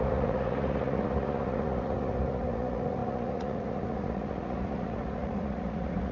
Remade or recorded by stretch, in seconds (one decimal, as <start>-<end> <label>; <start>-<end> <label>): 0.0-6.1 remade